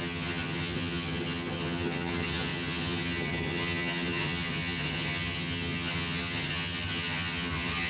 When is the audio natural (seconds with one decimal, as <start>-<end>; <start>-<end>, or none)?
none